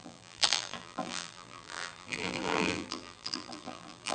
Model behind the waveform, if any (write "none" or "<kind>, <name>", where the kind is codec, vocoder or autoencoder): vocoder, BigVGAN v2